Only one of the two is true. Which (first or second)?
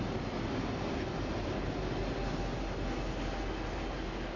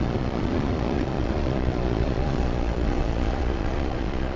first